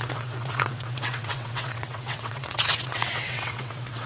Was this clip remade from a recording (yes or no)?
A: yes